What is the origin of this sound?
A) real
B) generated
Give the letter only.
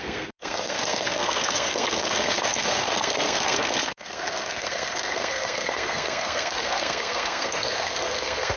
B